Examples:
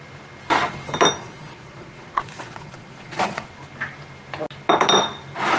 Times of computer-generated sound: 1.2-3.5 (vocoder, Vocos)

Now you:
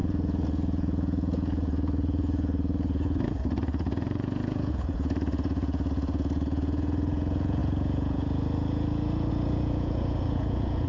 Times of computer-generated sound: 0.0-10.9 (vocoder, Vocos)

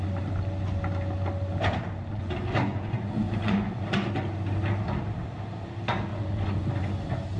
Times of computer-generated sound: 2.1-4.1 (vocoder, Vocos); 6.1-6.7

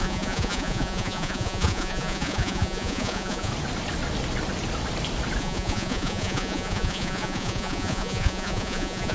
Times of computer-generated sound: 0.0-3.5 (vocoder, Vocos); 5.4-9.1

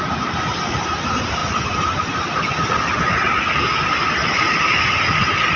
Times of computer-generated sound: none

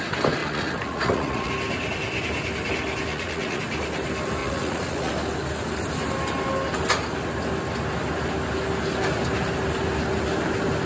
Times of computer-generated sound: 0.4-1.5 (vocoder, Vocos); 3.1-3.6; 4.4-5.1